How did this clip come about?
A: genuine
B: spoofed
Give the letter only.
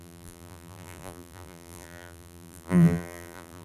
B